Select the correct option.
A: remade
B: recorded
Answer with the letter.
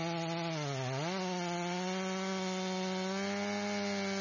B